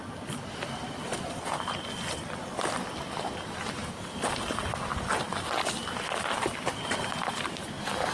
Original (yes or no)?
yes